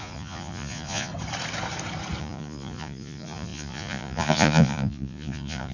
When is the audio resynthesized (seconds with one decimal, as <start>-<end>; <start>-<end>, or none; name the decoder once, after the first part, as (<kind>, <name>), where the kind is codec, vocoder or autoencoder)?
0.0-1.1 (vocoder, Vocos); 2.2-5.7